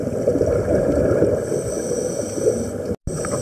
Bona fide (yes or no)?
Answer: yes